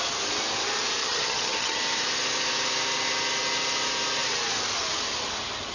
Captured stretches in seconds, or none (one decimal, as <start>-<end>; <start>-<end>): 0.0-1.0; 1.8-5.7